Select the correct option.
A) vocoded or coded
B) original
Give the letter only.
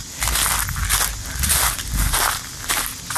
B